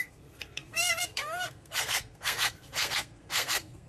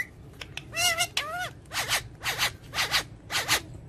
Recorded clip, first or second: second